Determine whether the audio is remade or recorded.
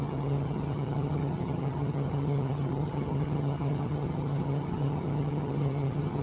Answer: remade